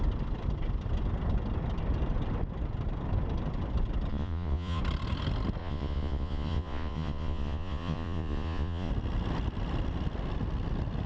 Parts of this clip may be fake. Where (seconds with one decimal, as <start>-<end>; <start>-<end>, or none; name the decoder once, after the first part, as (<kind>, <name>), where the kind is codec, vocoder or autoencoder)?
4.1-4.8 (vocoder, Vocos); 5.6-8.9